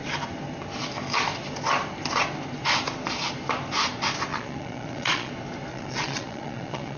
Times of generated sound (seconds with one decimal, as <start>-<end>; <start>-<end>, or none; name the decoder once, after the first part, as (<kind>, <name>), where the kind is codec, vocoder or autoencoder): 4.3-5.3 (vocoder, Vocos); 5.7-7.0